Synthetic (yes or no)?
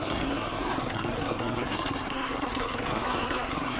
yes